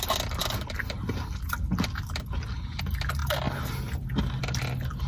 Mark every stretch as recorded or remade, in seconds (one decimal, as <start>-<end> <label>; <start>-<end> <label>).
0.0-5.1 recorded